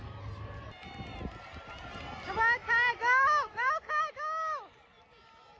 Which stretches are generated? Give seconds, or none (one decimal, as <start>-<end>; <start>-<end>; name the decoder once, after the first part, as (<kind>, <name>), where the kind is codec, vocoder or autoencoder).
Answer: none